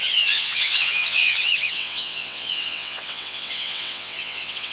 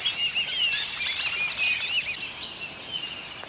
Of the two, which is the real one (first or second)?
second